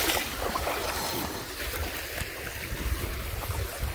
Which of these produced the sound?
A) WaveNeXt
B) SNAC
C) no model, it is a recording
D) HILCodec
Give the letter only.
C